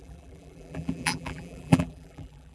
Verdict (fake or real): fake